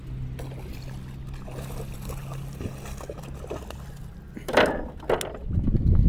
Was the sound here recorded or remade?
recorded